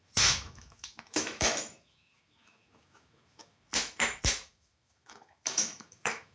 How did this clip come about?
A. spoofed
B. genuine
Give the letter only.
A